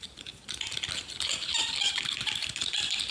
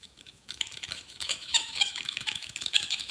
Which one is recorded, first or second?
first